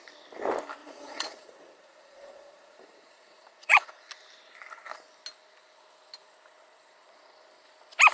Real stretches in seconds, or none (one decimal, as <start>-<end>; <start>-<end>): 0.0-0.8; 4.1-8.1